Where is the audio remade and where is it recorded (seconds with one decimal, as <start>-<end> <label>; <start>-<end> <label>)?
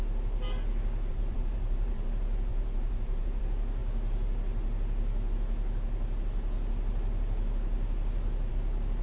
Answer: 0.0-1.1 recorded; 1.1-2.1 remade; 2.1-2.5 recorded; 2.5-3.4 remade; 3.4-9.0 recorded